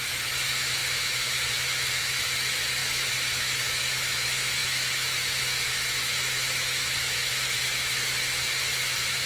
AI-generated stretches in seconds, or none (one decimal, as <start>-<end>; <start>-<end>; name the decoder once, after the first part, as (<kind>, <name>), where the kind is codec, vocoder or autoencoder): 0.0-9.3 (autoencoder, DAC-VAE)